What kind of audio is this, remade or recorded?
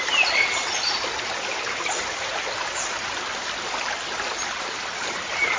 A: remade